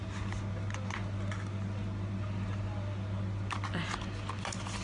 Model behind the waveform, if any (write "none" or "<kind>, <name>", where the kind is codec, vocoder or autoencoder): none